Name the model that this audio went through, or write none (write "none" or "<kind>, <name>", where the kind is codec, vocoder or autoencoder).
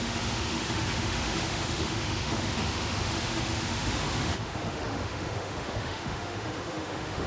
autoencoder, DAC-VAE